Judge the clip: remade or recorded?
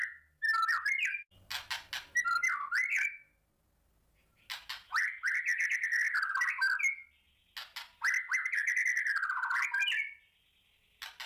recorded